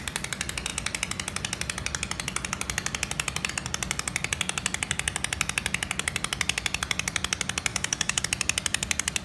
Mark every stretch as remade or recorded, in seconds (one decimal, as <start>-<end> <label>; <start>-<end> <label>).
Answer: 0.0-7.7 recorded; 7.7-8.2 remade; 8.2-9.2 recorded